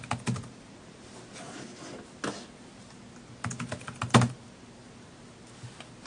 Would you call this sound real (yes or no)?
yes